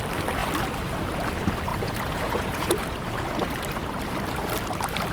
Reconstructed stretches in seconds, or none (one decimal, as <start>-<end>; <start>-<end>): 1.7-2.8